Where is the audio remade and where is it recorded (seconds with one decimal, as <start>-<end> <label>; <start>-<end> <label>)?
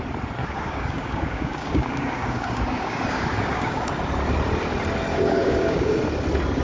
0.0-0.4 recorded; 0.4-3.9 remade; 3.9-5.1 recorded; 5.1-6.0 remade; 6.0-6.6 recorded